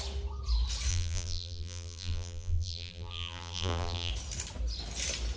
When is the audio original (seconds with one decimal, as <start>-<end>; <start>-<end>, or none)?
0.0-0.9; 4.1-5.4